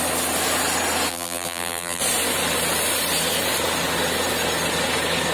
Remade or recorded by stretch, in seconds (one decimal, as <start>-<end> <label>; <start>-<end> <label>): 0.0-1.1 recorded; 1.1-2.0 remade; 2.0-5.3 recorded